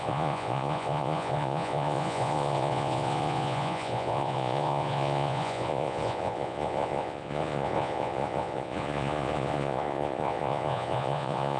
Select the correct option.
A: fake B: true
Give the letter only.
A